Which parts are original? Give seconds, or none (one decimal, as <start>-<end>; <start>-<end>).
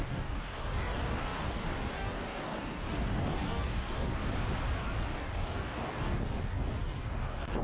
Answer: 4.2-4.8